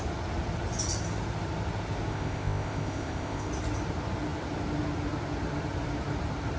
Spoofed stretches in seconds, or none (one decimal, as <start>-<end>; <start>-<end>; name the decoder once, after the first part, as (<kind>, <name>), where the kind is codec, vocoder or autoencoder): 2.1-3.5 (codec, ZipCodec)